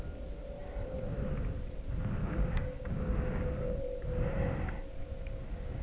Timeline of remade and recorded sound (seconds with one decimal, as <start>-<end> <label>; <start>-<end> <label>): 0.0-2.2 recorded; 2.2-3.8 remade; 3.8-5.8 recorded